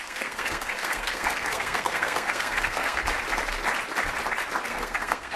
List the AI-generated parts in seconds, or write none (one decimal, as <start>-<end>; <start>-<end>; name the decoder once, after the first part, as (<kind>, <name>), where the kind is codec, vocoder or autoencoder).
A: 0.0-3.0 (codec, SNAC); 4.7-5.4